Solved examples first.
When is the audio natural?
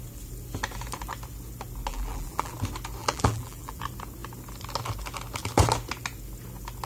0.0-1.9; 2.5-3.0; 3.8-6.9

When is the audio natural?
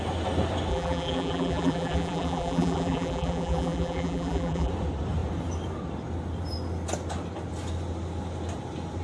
0.0-0.7; 4.7-9.0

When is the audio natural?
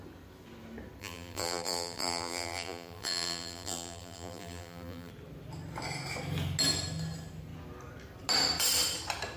0.0-1.0; 5.1-9.4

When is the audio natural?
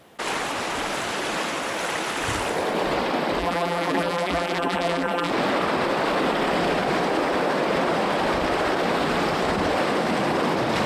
0.0-3.4; 5.3-10.9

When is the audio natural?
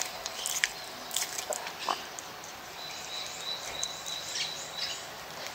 0.0-1.5; 4.8-5.5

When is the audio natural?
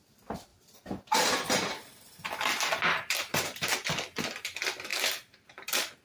0.0-0.5; 3.9-4.9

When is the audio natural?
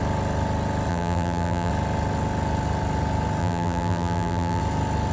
0.0-0.9; 1.7-3.4; 4.6-5.1